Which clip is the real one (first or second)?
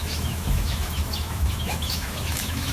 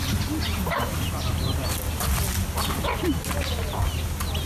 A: second